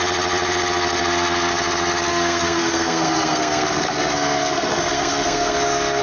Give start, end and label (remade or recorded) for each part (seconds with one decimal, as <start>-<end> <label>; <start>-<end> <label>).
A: 0.0-2.1 recorded; 2.1-6.0 remade